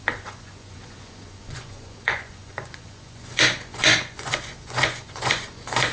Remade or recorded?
remade